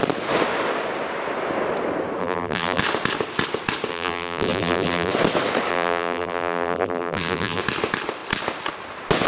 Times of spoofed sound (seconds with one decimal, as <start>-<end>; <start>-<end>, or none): 2.2-2.8; 3.9-5.1; 5.7-7.6